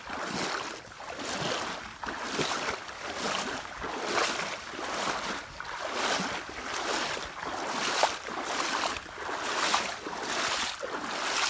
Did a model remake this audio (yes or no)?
no